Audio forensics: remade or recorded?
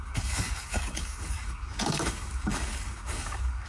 remade